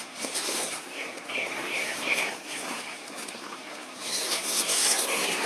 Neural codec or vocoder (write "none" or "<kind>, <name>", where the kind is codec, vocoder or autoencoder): codec, SNAC